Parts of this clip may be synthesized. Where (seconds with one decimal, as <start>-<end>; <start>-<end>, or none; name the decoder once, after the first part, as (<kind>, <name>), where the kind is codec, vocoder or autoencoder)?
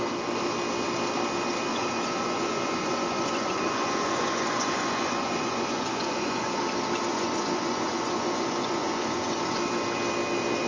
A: 1.7-6.6 (vocoder, Vocos); 7.1-9.6